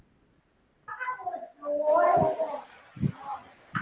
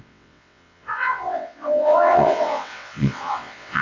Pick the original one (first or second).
first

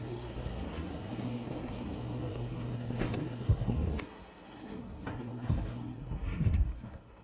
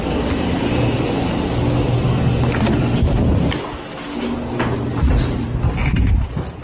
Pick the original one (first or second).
second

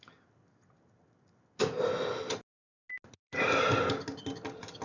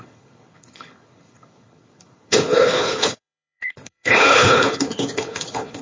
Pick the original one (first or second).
first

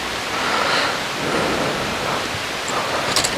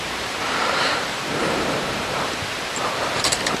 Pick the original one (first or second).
first